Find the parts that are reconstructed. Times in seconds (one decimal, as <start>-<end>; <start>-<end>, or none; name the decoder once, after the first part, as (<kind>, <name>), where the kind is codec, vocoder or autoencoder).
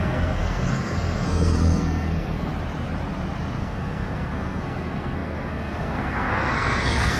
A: 0.0-2.5 (codec, SNAC); 3.6-7.2